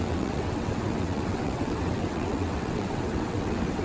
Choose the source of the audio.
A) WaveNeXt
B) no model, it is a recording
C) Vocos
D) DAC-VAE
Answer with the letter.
A